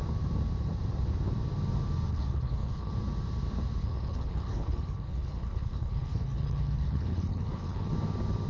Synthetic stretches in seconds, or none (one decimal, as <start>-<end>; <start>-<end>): 2.1-2.9; 3.8-7.9